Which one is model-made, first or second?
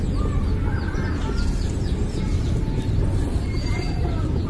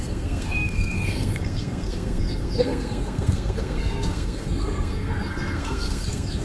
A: second